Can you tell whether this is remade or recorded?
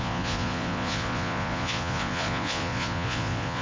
remade